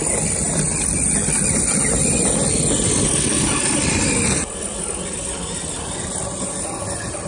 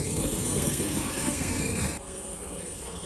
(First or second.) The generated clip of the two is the second